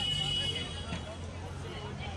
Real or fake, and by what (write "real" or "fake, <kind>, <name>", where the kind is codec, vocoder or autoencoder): real